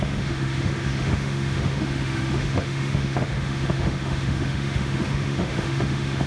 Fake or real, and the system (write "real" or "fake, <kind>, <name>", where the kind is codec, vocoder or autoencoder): fake, autoencoder, DAC-VAE